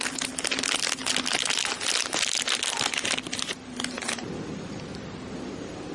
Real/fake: real